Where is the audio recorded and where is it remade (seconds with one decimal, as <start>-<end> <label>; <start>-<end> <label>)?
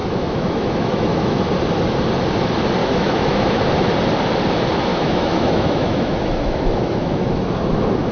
0.0-1.4 remade; 1.4-2.8 recorded; 2.8-3.7 remade; 3.7-4.9 recorded; 4.9-7.4 remade; 7.4-8.1 recorded